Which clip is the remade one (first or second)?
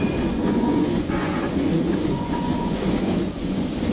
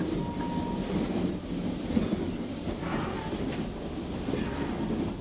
first